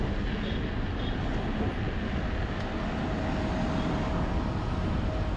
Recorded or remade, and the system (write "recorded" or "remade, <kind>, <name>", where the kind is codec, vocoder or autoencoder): recorded